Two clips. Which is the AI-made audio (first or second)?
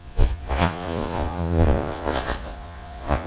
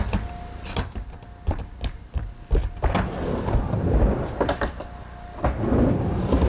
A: first